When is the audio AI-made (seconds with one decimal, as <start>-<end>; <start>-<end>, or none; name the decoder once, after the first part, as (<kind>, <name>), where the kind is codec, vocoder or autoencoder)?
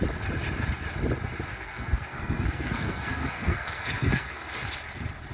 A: 1.5-4.7 (codec, SNAC)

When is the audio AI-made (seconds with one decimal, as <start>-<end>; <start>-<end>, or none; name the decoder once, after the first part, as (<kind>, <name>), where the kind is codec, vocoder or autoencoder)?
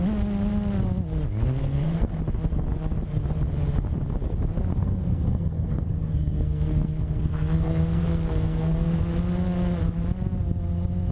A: 1.6-2.2 (codec, SNAC); 4.7-9.0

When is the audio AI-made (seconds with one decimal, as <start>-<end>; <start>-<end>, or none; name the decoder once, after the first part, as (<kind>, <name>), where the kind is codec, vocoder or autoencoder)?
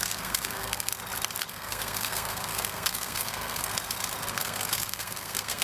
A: 0.0-0.9 (codec, SNAC); 1.5-3.7; 4.3-5.6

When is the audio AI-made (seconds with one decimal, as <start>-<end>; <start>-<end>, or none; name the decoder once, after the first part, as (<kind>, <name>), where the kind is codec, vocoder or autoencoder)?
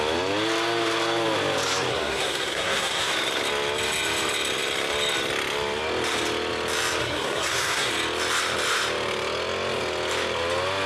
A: 1.9-3.1 (codec, SNAC); 7.0-7.9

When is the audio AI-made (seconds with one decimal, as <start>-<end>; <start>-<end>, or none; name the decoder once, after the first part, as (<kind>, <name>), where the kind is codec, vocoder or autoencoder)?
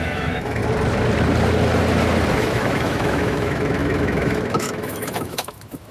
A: 0.0-0.6 (autoencoder, DAC-VAE); 2.3-5.9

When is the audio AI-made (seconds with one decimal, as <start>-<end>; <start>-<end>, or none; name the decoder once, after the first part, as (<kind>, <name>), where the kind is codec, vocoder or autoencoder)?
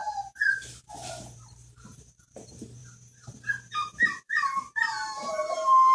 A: 0.7-2.8 (vocoder, BigVGAN v2); 3.3-5.9